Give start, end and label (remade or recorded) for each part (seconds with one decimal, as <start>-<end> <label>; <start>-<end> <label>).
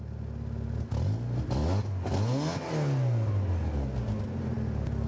0.0-5.1 recorded